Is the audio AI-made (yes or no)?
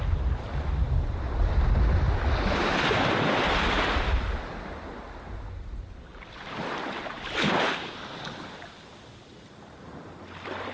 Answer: no